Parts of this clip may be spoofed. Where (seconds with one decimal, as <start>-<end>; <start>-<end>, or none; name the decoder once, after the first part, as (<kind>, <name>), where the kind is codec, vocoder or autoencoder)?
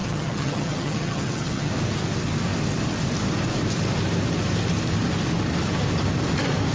0.0-1.7 (vocoder, HiFi-GAN)